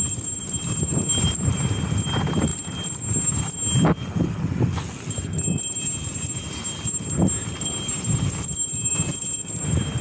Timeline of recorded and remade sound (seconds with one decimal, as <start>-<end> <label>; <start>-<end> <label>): 0.0-10.0 recorded